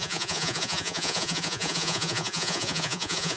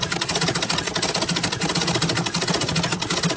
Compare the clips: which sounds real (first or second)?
second